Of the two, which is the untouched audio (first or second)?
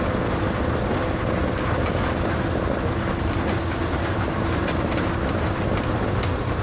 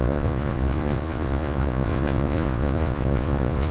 first